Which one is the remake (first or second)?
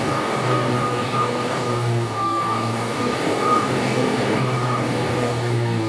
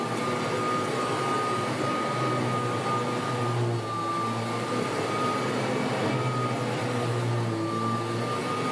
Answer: first